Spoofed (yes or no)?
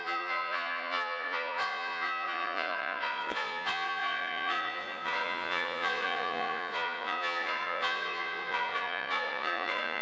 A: yes